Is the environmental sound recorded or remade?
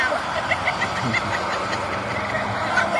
recorded